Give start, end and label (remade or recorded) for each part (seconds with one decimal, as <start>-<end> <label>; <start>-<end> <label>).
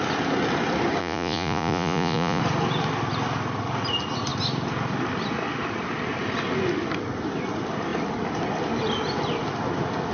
0.0-1.0 recorded; 1.0-2.4 remade; 2.4-10.1 recorded